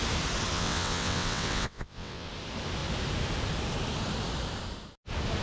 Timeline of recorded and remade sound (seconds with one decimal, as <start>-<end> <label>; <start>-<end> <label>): 0.0-0.5 recorded; 0.5-2.3 remade; 2.3-5.4 recorded

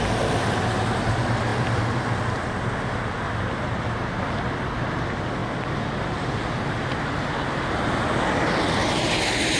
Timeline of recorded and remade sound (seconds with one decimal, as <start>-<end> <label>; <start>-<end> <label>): 0.0-1.5 remade; 1.5-3.8 recorded; 3.8-5.4 remade; 5.4-8.9 recorded; 8.9-9.6 remade

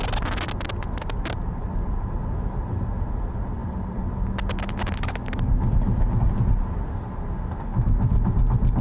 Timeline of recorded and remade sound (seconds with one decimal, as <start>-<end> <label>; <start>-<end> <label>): 0.0-8.8 recorded

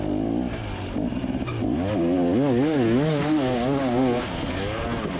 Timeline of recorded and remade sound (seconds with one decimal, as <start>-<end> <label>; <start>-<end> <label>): 0.0-5.2 recorded

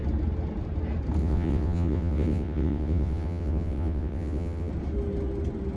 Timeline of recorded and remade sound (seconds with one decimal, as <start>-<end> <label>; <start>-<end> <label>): 0.0-1.2 recorded; 1.2-4.7 remade; 4.7-5.8 recorded